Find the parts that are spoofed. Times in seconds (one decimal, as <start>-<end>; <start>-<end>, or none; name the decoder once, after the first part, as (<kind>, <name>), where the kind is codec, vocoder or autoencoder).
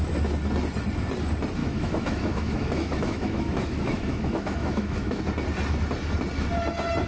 1.6-5.2 (autoencoder, DAC-VAE)